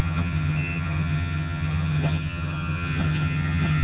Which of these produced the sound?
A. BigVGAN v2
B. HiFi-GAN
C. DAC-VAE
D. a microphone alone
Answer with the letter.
B